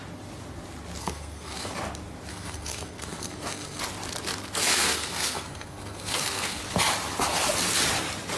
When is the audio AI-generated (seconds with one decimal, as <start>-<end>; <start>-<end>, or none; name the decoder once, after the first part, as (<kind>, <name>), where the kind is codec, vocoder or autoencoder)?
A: 1.0-1.7 (codec, SNAC); 2.3-3.8; 4.7-6.6